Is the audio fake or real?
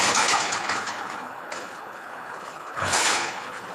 fake